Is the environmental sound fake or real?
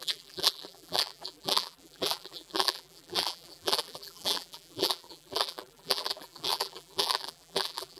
fake